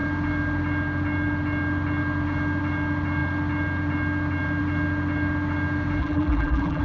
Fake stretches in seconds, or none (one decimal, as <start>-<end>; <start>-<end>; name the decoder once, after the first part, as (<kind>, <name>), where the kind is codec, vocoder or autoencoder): 6.0-6.8 (vocoder, BigVGAN v2)